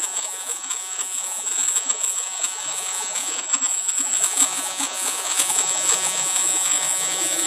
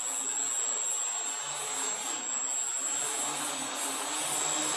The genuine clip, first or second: second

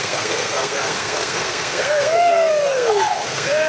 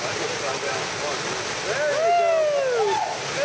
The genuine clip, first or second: second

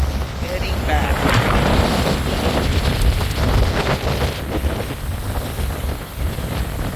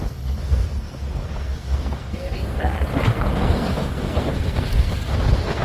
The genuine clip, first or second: first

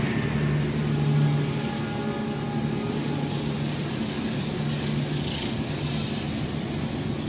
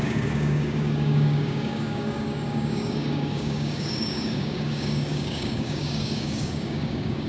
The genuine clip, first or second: first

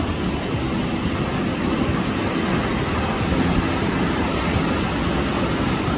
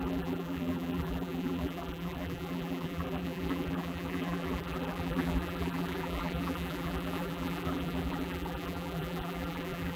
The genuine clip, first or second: first